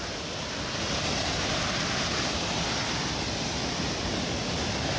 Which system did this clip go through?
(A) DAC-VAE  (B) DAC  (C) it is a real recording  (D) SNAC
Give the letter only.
C